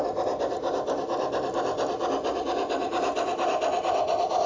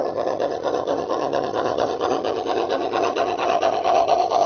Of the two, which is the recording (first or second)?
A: first